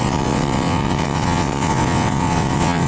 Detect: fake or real fake